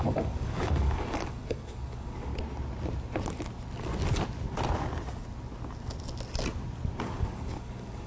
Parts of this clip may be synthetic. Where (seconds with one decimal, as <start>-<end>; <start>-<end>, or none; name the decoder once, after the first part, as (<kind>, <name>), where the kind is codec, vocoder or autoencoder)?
0.0-2.3 (codec, DAC); 7.0-8.1